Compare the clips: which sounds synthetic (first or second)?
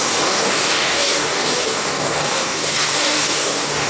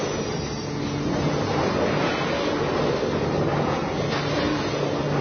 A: first